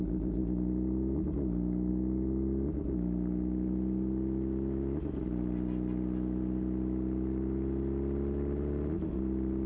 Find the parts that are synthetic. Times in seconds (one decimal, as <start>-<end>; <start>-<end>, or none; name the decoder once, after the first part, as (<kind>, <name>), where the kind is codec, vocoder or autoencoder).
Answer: none